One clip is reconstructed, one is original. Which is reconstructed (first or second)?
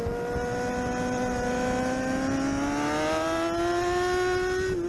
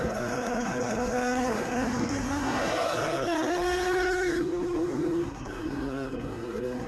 second